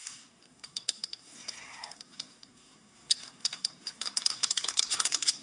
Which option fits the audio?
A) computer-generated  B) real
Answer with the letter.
A